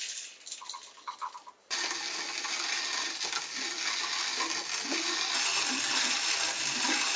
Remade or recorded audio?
recorded